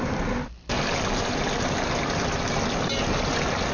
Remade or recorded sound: recorded